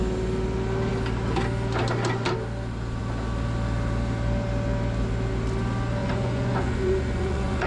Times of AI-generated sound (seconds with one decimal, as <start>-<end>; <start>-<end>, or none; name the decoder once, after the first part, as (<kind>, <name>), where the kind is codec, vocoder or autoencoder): 6.0-7.7 (vocoder, Vocos)